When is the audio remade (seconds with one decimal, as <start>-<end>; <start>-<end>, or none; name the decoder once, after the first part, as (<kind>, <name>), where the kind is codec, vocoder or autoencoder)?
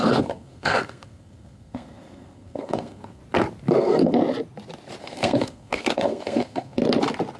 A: 0.0-3.2 (codec, SNAC); 3.8-4.2; 5.0-6.8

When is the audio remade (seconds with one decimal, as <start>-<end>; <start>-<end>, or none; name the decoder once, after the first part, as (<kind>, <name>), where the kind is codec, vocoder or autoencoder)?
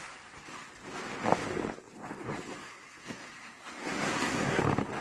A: 2.6-4.6 (codec, SNAC)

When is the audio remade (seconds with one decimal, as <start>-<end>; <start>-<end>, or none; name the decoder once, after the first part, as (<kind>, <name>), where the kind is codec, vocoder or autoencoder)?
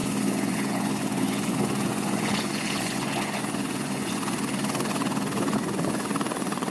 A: 0.0-6.7 (vocoder, Vocos)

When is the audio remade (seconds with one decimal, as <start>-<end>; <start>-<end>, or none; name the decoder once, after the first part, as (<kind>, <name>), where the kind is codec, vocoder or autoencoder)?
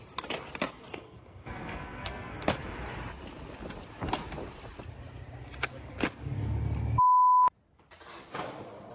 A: 0.9-2.5 (codec, SNAC)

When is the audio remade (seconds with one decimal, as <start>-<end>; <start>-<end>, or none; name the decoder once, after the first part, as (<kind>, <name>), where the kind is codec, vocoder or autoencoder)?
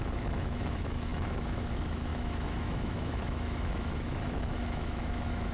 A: 0.0-5.5 (autoencoder, DAC-VAE)